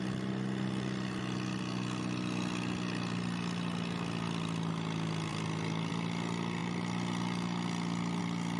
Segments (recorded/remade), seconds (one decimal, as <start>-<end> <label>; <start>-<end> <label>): 0.0-8.6 recorded